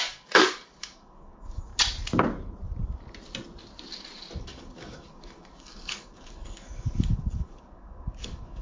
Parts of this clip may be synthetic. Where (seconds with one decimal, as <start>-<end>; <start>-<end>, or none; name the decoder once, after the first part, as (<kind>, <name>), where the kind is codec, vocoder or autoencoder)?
0.0-1.7 (codec, DAC); 4.4-8.6